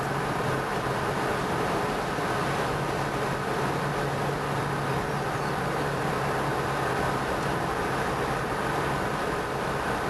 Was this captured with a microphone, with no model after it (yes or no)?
yes